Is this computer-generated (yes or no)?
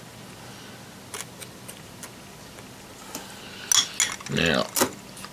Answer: no